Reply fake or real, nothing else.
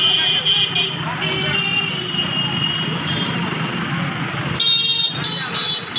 real